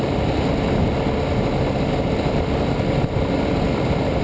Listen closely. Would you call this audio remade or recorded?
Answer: recorded